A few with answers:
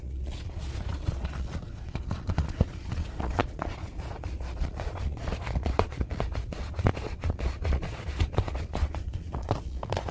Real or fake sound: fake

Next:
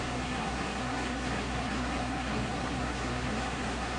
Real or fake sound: fake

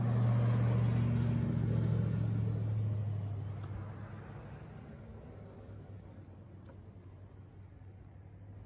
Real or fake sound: real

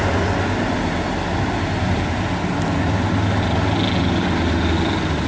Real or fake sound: real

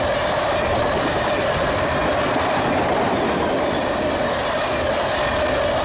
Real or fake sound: real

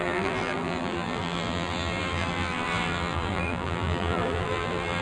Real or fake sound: fake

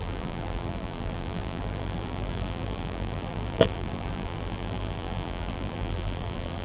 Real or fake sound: fake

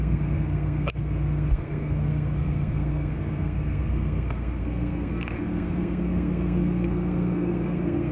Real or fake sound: fake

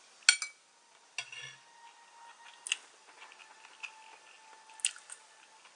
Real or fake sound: real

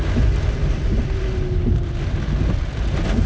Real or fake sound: real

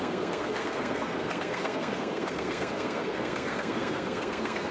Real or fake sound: fake